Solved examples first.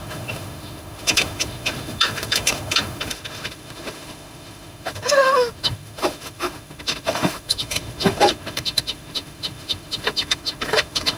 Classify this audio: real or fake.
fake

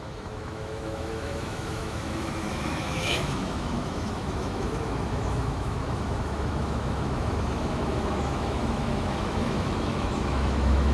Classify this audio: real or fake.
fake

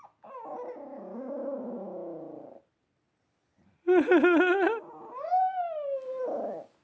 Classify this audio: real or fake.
real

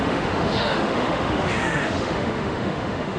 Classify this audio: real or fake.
fake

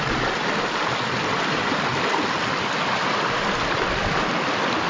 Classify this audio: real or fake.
real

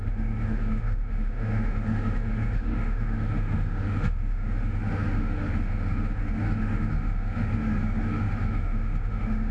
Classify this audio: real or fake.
fake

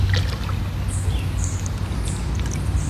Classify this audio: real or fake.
real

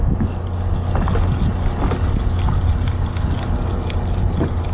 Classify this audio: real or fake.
real